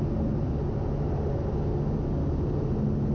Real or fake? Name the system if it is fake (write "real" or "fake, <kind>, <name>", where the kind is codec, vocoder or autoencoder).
real